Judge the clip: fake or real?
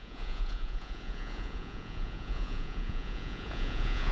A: fake